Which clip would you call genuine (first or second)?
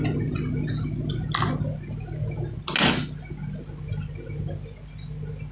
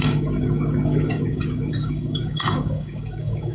first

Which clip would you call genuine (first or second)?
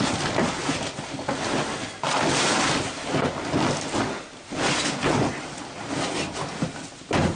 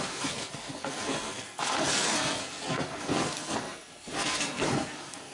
first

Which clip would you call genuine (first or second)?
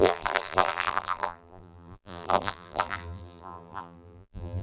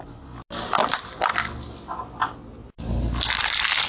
second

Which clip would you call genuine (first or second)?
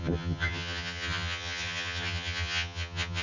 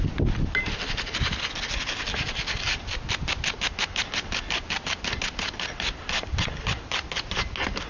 second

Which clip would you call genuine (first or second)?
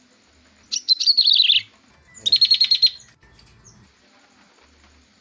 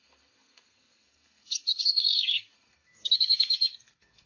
first